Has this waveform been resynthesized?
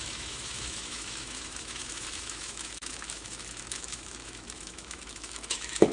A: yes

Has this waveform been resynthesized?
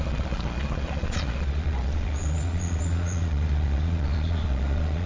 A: yes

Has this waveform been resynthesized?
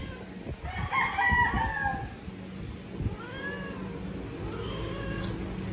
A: no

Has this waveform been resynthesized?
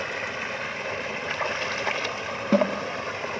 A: no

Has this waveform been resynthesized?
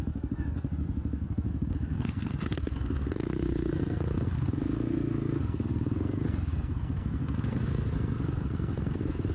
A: yes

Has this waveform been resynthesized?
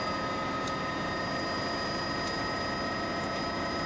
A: no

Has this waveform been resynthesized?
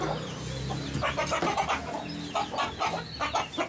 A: no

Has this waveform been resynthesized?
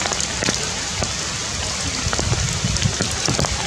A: no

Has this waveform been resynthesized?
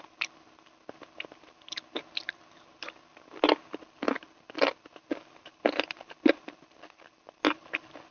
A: no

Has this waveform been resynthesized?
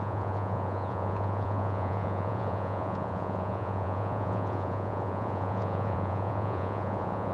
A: yes